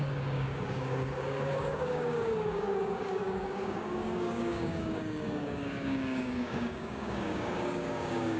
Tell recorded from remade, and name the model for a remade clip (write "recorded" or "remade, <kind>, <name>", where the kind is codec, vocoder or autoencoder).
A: remade, codec, DAC